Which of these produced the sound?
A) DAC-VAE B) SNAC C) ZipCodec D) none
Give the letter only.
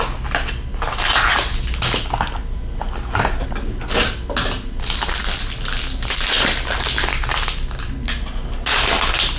D